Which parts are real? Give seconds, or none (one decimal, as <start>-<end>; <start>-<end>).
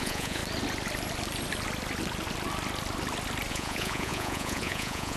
0.4-3.5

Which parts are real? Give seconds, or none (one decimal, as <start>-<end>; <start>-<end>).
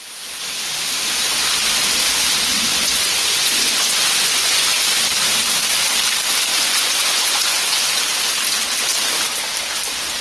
0.0-2.5; 4.7-6.5; 8.0-10.2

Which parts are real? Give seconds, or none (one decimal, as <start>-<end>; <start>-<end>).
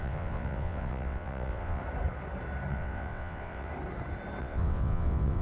1.8-2.7; 3.7-4.4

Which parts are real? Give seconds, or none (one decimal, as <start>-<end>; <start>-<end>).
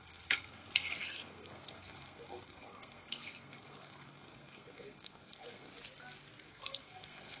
5.7-6.5